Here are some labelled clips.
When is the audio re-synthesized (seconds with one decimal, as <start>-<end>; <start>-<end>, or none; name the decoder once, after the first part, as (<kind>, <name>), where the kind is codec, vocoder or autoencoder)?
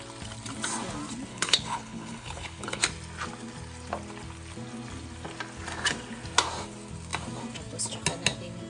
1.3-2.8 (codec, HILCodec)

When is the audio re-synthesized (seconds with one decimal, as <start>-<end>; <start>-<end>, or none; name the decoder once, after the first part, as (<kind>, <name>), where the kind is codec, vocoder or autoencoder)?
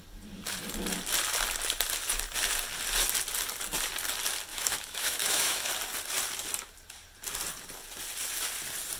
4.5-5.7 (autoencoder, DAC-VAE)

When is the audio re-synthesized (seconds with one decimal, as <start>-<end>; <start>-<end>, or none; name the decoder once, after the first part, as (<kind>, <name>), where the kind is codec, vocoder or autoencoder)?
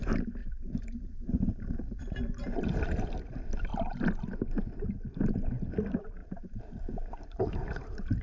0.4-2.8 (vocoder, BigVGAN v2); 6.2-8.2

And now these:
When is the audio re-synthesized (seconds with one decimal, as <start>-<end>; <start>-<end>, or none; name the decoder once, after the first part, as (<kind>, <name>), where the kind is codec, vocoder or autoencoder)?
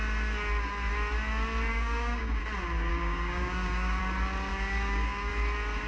1.7-2.4 (codec, DAC); 2.9-4.0; 4.5-5.3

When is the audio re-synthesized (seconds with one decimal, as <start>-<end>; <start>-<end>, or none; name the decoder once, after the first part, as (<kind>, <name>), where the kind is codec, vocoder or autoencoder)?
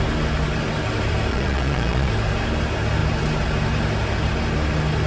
1.3-2.1 (vocoder, Vocos)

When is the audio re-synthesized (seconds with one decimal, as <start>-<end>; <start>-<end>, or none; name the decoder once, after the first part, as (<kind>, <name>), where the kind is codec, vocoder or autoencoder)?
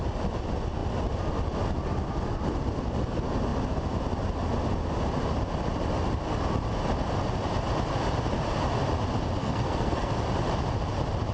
9.4-10.2 (codec, SNAC)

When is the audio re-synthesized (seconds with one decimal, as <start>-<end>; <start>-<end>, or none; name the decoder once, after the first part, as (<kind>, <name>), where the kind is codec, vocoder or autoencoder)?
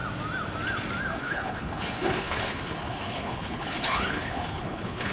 1.2-5.1 (codec, HILCodec)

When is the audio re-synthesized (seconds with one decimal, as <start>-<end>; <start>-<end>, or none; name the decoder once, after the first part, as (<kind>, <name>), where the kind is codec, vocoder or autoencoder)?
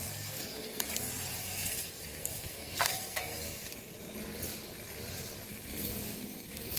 0.0-0.8 (codec, SNAC); 1.4-4.0; 5.5-6.8